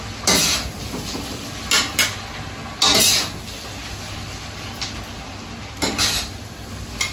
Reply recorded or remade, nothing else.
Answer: recorded